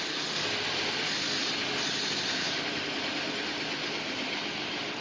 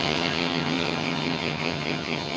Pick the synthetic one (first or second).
second